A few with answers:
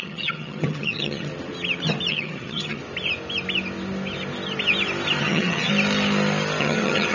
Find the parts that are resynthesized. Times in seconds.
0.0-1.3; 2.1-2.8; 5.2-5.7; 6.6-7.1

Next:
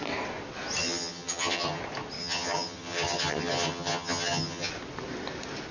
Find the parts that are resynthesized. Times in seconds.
0.8-1.8; 2.2-4.7